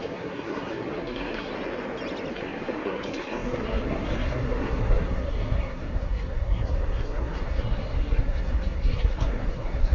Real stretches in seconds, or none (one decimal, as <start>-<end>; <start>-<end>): 1.5-2.3